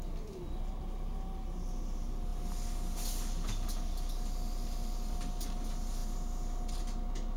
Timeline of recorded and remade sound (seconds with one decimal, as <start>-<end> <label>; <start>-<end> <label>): 0.0-7.4 recorded

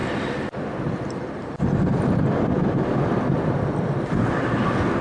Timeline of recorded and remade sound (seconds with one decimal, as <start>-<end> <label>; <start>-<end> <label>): 0.0-5.0 recorded

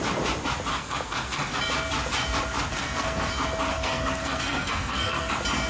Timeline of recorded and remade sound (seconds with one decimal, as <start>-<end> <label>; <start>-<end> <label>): 0.0-0.7 recorded; 0.7-1.6 remade; 1.6-2.7 recorded; 2.7-3.3 remade; 3.3-3.7 recorded; 3.7-5.3 remade; 5.3-5.7 recorded